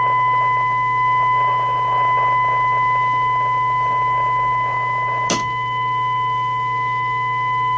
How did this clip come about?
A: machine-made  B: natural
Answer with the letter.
B